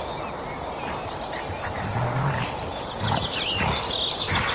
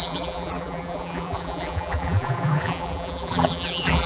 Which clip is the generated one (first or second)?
second